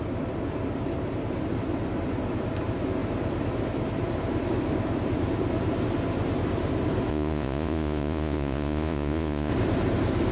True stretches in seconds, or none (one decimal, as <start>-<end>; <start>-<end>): 0.0-7.1; 9.5-10.3